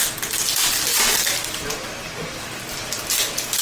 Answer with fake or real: real